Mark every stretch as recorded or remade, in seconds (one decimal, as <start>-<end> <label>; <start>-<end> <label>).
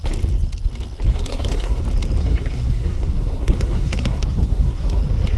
0.0-1.1 recorded; 1.1-1.8 remade; 1.8-2.2 recorded; 2.2-5.0 remade; 5.0-5.4 recorded